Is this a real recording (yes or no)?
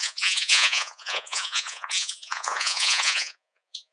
no